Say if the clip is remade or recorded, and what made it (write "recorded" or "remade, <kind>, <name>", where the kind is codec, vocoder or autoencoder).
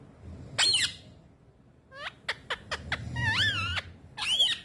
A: recorded